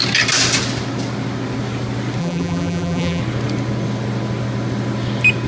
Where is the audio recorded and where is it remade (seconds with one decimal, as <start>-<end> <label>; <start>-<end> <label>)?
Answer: 0.0-2.2 recorded; 2.2-3.2 remade; 3.2-5.5 recorded